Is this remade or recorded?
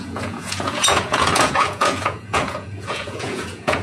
remade